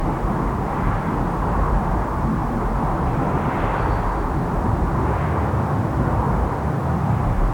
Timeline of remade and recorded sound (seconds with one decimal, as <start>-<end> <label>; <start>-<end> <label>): 0.0-7.5 recorded